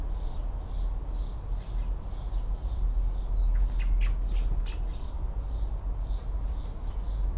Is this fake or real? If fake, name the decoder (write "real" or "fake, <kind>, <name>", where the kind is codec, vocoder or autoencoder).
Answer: real